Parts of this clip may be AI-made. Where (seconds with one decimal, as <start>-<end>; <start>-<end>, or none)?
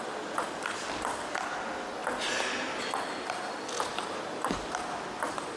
none